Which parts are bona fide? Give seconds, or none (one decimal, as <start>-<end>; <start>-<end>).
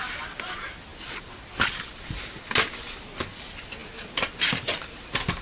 0.0-5.4